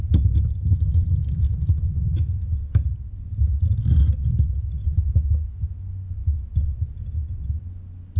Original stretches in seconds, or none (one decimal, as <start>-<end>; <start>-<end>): 0.0-8.2